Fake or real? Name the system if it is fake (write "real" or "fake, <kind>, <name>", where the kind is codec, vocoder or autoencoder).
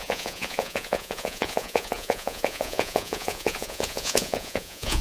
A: fake, vocoder, Vocos